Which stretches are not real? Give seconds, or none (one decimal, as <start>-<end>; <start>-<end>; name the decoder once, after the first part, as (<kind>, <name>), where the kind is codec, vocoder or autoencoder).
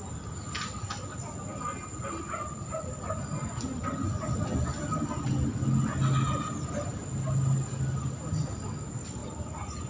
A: 9.2-9.9 (vocoder, BigVGAN v2)